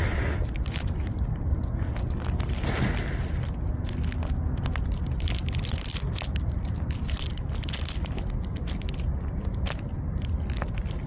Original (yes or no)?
yes